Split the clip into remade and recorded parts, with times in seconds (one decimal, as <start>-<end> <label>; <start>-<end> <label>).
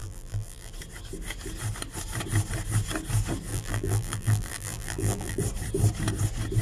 0.0-0.7 remade; 0.7-3.5 recorded; 3.5-5.4 remade; 5.4-6.6 recorded